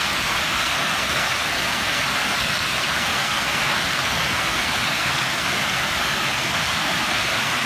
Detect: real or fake fake